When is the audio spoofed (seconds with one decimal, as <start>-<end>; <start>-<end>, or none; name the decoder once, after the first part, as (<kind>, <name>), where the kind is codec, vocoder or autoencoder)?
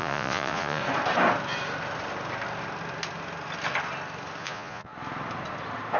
0.0-0.8 (vocoder, Vocos); 4.4-4.9